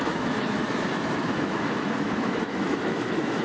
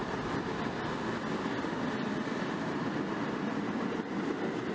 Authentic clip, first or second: second